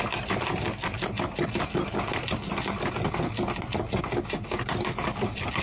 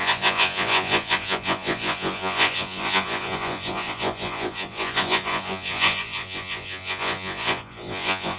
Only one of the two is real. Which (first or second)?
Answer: first